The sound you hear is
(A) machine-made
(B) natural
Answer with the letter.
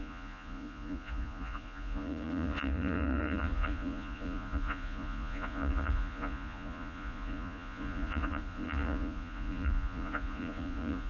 A